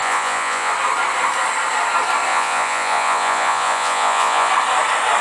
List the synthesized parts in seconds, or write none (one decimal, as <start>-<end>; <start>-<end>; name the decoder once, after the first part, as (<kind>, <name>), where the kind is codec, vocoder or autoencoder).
0.0-0.7 (vocoder, Vocos); 2.3-4.5